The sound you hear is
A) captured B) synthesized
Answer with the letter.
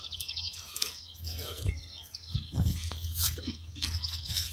B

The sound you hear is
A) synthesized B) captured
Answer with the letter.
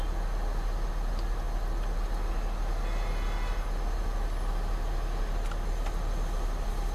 B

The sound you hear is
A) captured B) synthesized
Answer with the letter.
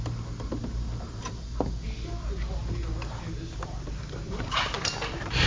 A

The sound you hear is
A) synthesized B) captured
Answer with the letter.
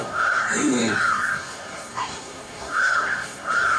A